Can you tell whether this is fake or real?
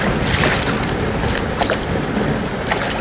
real